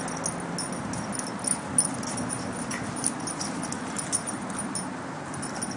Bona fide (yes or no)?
yes